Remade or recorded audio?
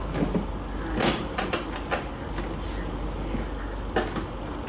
recorded